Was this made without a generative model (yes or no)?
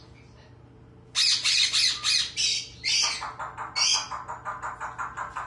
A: yes